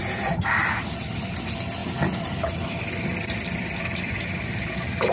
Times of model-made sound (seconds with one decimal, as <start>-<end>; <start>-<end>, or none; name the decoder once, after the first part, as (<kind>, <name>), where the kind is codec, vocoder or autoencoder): 0.0-5.1 (vocoder, BigVGAN v2)